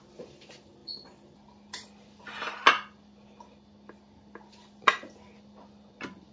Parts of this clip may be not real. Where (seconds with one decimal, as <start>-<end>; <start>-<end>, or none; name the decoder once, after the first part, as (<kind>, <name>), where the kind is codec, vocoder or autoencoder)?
0.8-2.2 (vocoder, BigVGAN v2)